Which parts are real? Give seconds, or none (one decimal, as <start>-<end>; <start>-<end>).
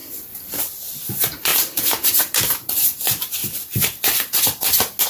3.4-5.1